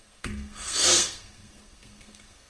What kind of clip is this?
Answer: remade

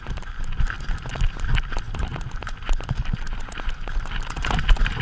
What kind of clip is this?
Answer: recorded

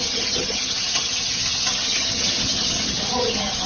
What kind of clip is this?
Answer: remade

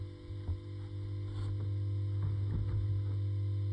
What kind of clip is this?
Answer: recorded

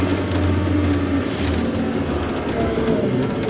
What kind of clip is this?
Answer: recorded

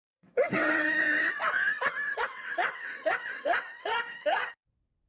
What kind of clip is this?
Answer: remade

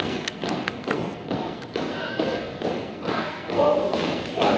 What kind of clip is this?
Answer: remade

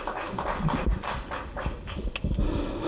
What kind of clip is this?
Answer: recorded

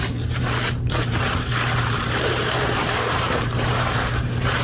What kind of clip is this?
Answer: remade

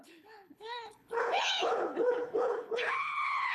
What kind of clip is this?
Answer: remade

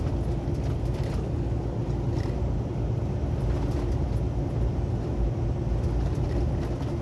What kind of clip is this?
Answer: recorded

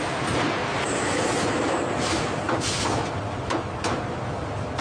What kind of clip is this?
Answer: recorded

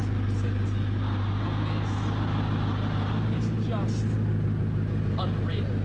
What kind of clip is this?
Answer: recorded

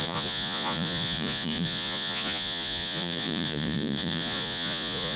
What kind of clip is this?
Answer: remade